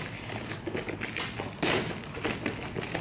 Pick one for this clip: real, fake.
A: real